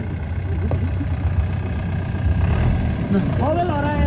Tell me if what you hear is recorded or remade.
recorded